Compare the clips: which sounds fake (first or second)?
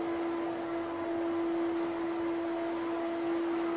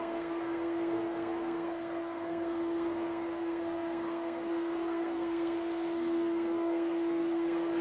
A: second